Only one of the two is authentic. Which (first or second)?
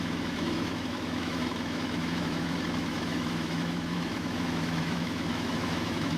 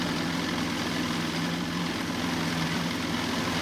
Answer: second